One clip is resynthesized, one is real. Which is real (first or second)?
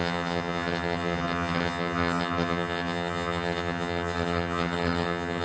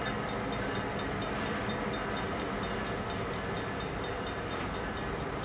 second